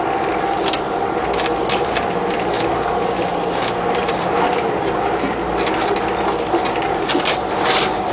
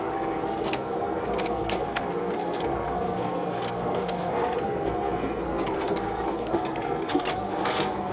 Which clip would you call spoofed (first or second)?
second